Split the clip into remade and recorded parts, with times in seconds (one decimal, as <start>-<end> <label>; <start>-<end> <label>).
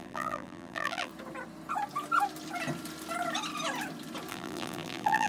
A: 0.0-1.1 remade; 1.1-4.3 recorded; 4.3-5.3 remade